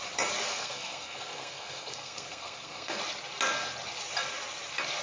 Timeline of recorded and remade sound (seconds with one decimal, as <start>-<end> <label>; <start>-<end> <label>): 0.0-0.5 recorded; 0.5-3.0 remade; 3.0-5.0 recorded